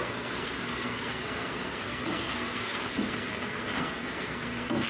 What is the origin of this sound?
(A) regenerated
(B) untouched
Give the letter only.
A